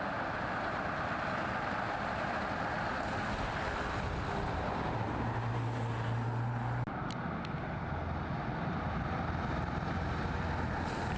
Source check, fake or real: real